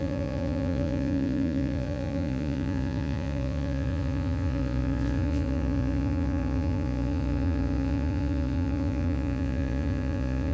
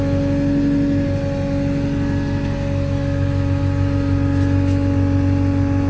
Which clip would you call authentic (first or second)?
second